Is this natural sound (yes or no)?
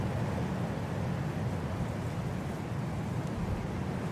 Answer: yes